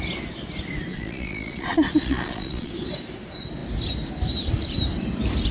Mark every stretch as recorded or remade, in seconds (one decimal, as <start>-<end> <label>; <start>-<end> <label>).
0.0-0.9 recorded; 0.9-2.7 remade; 2.7-5.5 recorded